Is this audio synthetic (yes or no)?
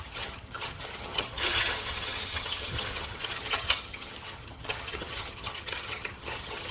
yes